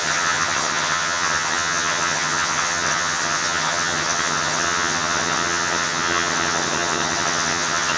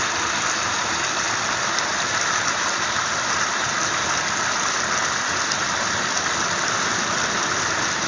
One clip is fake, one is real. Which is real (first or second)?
second